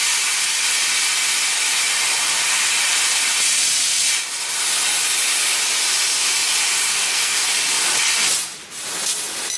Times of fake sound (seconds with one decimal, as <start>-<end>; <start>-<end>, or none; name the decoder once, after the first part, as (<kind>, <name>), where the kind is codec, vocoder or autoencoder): 6.9-7.4 (codec, SNAC)